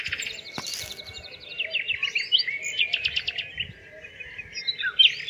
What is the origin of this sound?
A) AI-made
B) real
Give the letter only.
B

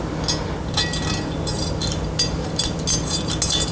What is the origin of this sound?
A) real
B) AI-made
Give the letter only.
A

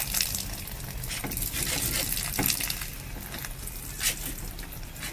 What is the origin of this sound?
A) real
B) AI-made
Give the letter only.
A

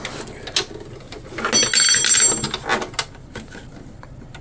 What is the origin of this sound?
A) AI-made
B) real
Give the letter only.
B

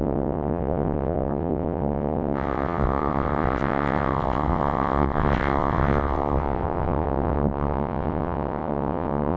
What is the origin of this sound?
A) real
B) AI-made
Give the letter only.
B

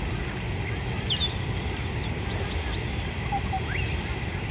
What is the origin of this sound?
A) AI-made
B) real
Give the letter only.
B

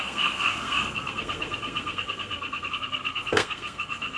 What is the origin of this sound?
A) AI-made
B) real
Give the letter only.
A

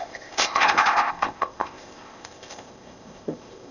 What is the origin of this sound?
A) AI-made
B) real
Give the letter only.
A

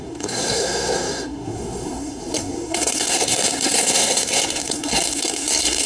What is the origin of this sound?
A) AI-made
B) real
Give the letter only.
A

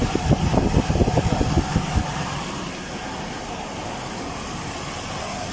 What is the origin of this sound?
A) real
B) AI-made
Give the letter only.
B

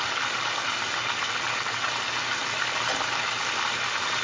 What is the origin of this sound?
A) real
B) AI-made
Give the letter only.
A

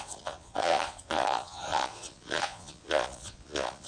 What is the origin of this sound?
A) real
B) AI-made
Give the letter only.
B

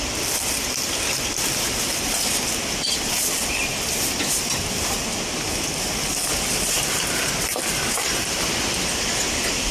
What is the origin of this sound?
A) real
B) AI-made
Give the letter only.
A